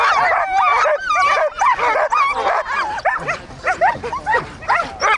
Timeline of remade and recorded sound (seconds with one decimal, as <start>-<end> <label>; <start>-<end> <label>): 0.0-5.2 recorded